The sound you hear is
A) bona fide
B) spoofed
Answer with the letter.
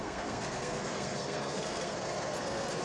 B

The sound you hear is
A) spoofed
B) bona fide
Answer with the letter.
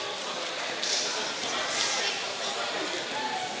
B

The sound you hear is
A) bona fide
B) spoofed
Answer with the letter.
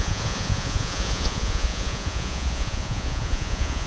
B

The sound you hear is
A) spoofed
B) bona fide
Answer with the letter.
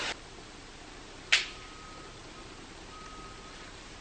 B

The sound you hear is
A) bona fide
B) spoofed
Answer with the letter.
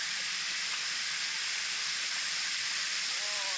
B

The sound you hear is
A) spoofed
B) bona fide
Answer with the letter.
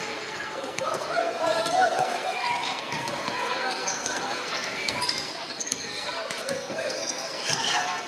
A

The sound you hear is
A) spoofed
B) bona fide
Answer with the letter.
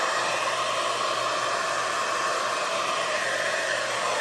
B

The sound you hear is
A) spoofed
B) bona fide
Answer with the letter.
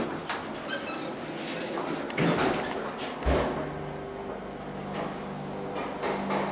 B